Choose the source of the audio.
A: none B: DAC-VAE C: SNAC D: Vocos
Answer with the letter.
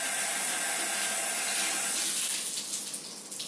A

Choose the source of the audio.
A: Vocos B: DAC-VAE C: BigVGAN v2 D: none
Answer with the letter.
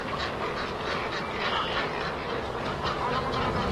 D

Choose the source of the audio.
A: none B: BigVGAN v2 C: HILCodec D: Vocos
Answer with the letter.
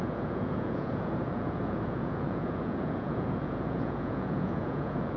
D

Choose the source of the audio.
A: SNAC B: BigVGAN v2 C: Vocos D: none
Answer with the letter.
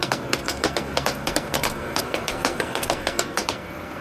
A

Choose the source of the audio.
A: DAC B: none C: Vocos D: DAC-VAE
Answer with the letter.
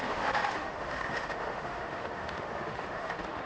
D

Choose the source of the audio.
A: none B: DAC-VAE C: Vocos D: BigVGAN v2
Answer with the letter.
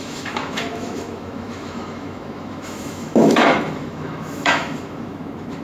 B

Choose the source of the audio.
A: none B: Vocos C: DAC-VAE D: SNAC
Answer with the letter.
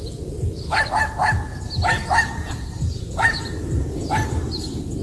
A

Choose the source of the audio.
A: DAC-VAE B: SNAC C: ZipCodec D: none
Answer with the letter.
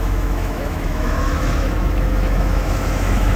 A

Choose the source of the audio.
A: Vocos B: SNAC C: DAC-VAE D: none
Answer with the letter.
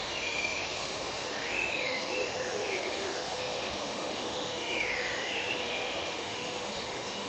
C